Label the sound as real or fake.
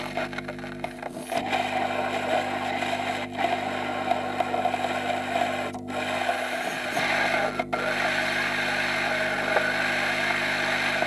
real